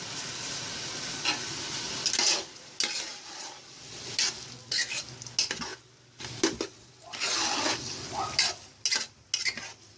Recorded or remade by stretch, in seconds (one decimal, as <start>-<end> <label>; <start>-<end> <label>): 0.0-3.1 recorded; 3.1-3.6 remade; 3.6-10.0 recorded